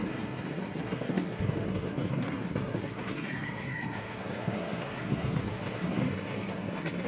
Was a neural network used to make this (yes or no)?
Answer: yes